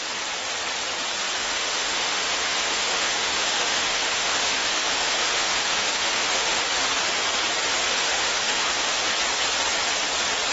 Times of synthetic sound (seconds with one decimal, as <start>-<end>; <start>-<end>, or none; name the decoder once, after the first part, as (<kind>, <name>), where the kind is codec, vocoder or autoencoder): 1.4-6.6 (autoencoder, DAC-VAE); 7.8-9.0